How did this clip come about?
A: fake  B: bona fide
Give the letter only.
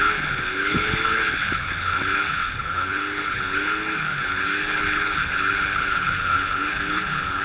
A